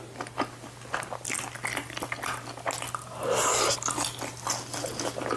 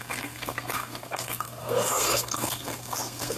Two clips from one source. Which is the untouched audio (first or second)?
first